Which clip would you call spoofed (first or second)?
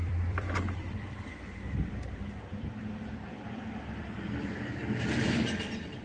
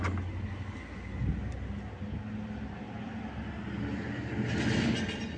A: first